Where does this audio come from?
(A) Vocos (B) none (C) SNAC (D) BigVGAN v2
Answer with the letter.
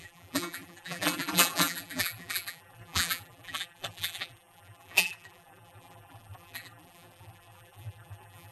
D